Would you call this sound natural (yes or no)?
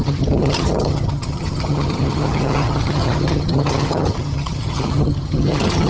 no